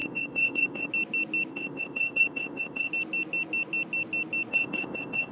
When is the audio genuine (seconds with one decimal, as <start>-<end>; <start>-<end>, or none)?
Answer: 0.9-1.5; 2.9-4.5